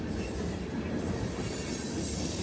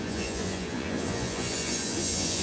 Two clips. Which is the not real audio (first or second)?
second